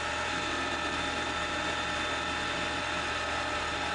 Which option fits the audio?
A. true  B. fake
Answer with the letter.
A